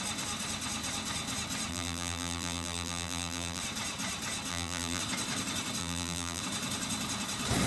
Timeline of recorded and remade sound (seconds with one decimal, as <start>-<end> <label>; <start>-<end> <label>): 0.0-1.7 recorded; 1.7-3.6 remade; 3.6-4.5 recorded; 4.5-5.0 remade; 5.0-5.8 recorded; 5.8-6.4 remade; 6.4-7.7 recorded